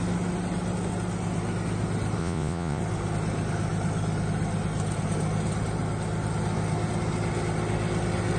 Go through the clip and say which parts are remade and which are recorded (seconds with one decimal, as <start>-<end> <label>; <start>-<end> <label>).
0.0-2.2 recorded; 2.2-2.8 remade; 2.8-8.4 recorded